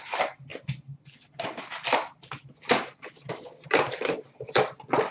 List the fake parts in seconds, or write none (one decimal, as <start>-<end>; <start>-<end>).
none